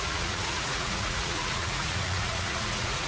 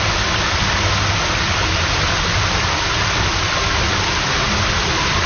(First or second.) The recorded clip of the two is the second